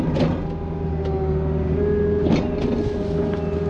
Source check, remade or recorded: recorded